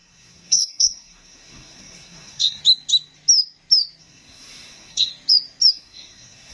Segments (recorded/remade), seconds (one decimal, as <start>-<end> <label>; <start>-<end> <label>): 0.0-2.6 remade; 2.6-4.0 recorded; 4.0-5.1 remade; 5.1-5.7 recorded; 5.7-6.5 remade